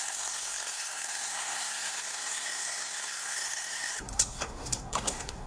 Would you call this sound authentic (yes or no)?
no